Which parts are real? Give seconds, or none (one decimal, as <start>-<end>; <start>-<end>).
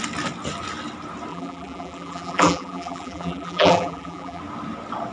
0.0-1.3; 4.4-5.1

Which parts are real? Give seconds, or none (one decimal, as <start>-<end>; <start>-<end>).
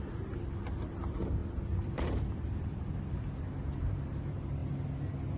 4.6-5.4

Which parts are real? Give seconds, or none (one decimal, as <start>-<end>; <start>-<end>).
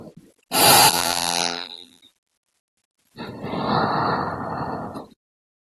0.0-0.9; 2.0-5.6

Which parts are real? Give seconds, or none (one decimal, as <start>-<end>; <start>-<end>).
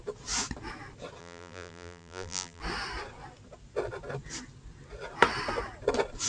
0.0-1.2; 2.6-6.3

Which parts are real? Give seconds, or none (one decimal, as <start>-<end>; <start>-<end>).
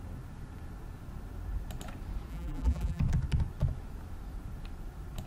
0.0-2.3; 3.0-5.3